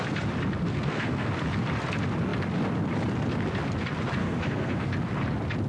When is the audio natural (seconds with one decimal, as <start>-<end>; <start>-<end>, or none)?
0.0-0.7; 1.3-4.2; 4.9-5.7